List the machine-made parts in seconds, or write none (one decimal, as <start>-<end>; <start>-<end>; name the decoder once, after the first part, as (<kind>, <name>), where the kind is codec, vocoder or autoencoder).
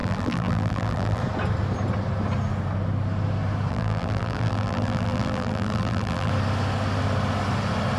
0.0-1.2 (vocoder, BigVGAN v2); 3.7-6.3